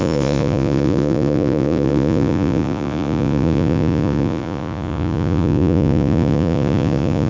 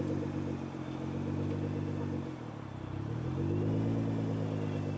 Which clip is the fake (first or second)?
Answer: first